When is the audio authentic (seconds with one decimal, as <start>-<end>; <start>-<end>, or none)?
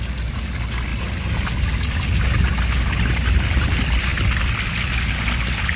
0.0-5.8